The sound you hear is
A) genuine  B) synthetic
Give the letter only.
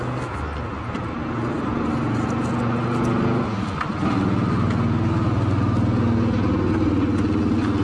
A